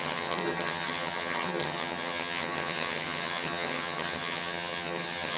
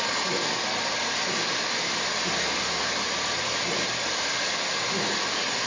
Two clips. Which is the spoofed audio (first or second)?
first